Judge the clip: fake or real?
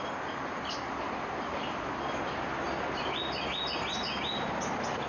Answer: real